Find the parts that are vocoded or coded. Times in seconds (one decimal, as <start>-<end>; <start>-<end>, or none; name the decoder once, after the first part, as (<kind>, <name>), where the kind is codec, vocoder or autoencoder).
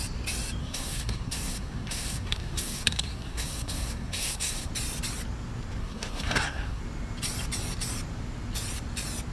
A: 0.6-4.7 (codec, SNAC); 5.8-6.8